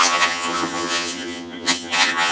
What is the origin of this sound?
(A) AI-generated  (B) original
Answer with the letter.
A